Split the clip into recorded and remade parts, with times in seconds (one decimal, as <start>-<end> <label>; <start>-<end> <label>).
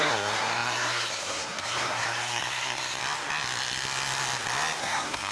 0.0-3.0 remade; 3.0-4.8 recorded; 4.8-5.3 remade